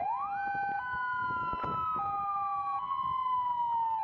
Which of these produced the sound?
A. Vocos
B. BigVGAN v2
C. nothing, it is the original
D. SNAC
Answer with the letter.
C